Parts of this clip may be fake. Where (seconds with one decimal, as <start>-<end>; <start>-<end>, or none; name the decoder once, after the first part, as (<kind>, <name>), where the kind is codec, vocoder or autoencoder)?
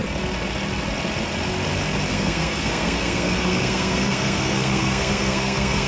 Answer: 2.1-5.9 (codec, SNAC)